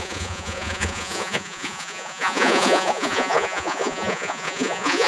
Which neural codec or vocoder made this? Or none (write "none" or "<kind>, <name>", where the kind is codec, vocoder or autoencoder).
vocoder, Vocos